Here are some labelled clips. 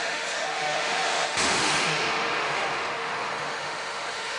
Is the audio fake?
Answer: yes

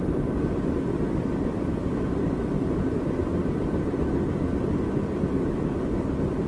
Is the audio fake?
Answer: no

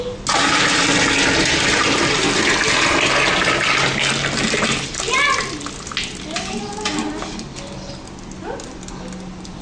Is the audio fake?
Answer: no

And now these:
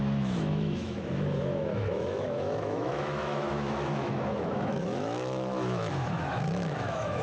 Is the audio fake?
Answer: yes